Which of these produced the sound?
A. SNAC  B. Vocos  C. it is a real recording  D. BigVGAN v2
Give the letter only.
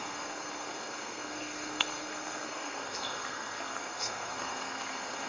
A